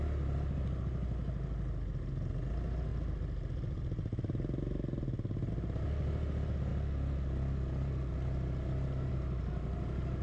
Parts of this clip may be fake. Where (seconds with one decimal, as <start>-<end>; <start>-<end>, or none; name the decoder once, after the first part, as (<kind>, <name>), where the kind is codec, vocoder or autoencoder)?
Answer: none